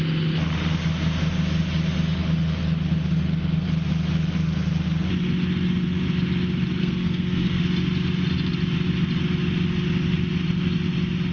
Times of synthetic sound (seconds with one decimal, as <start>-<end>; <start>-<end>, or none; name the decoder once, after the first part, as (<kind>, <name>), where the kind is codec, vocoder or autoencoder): 6.8-7.6 (codec, SNAC)